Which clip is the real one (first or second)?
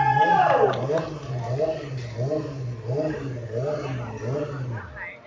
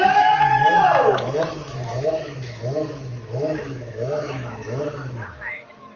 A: first